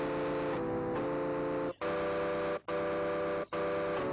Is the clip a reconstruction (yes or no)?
no